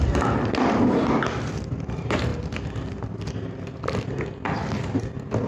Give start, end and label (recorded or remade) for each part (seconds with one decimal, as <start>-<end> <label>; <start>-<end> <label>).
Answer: 0.0-5.5 recorded